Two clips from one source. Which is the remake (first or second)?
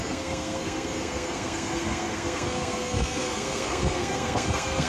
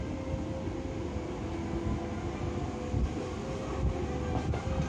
first